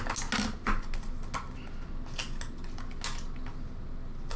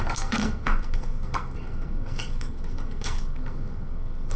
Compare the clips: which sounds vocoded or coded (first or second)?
second